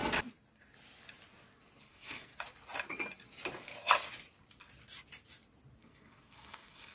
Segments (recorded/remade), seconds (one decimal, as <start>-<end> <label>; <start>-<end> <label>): 0.0-1.9 recorded; 1.9-2.3 remade; 2.3-5.8 recorded; 5.8-6.9 remade